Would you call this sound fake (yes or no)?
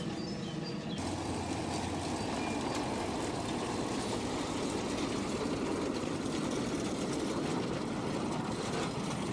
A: no